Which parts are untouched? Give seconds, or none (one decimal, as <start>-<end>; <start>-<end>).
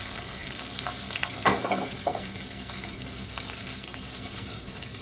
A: none